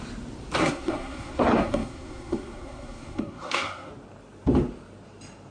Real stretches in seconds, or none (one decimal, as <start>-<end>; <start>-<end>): 0.0-0.6; 3.9-5.5